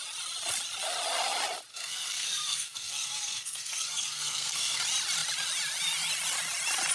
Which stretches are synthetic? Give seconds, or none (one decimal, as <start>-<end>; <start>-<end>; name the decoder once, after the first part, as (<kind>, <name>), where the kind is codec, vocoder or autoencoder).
1.7-4.8 (codec, SNAC)